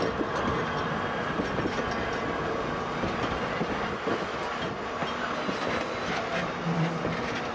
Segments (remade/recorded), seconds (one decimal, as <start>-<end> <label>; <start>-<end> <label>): 0.0-7.5 recorded